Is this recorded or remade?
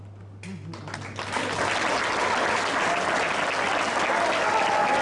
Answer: recorded